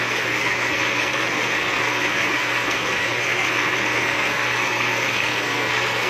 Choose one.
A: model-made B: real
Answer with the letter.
A